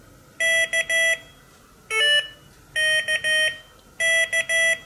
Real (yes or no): yes